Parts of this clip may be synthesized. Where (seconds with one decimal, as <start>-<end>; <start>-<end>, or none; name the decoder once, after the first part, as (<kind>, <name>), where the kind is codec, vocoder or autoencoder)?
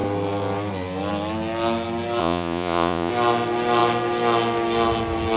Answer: 2.2-3.1 (vocoder, Vocos)